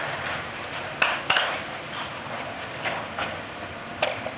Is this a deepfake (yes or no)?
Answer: no